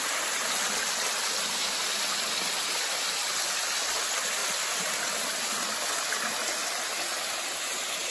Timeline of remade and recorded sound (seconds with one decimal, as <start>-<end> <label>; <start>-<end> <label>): 0.0-8.1 recorded